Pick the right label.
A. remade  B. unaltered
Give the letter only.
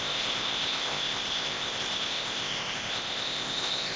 A